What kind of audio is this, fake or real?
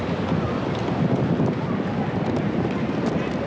real